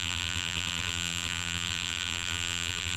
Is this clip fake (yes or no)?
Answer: yes